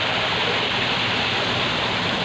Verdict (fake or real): real